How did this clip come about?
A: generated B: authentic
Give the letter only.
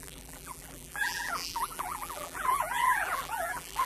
A